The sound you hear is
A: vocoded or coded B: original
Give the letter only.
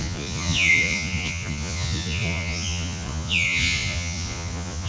A